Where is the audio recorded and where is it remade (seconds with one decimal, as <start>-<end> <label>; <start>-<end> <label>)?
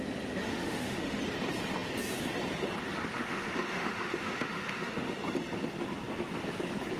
0.0-0.5 recorded; 0.5-1.2 remade; 1.2-3.1 recorded; 3.1-5.2 remade; 5.2-7.0 recorded